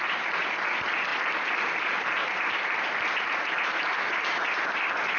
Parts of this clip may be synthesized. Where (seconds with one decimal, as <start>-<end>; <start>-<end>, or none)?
none